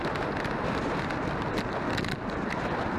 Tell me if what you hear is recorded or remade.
recorded